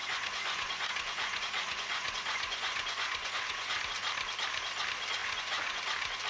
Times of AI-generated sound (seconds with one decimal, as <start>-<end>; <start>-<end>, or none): 0.0-3.8; 5.2-5.8